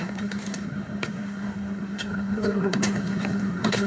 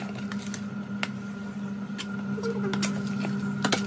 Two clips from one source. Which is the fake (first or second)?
first